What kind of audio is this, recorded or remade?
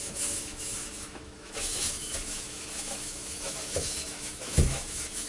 remade